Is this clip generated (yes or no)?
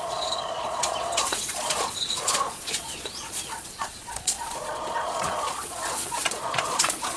yes